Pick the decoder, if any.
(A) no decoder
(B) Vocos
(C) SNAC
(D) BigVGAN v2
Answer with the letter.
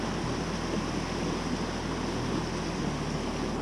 A